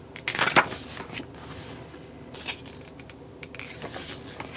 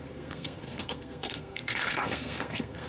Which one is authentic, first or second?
first